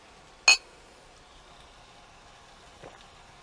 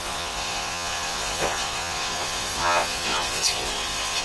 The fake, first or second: second